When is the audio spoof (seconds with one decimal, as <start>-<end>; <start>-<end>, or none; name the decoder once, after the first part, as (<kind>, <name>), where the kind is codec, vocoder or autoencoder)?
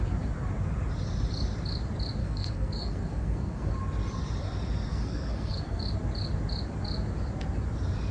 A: 2.2-3.7 (codec, SNAC); 4.9-5.8